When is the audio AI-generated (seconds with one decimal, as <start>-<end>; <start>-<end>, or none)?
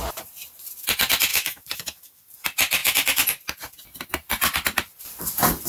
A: 1.3-2.3